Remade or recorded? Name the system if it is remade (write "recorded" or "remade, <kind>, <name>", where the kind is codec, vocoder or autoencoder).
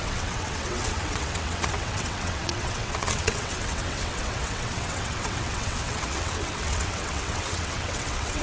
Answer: remade, vocoder, WaveNeXt